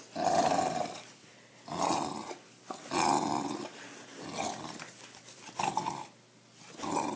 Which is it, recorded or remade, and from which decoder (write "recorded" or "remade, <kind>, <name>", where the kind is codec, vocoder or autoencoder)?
recorded